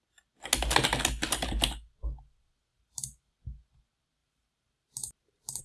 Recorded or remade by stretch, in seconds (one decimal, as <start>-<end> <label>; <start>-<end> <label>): 0.0-2.7 recorded; 2.7-3.3 remade; 3.3-4.2 recorded; 4.2-5.6 remade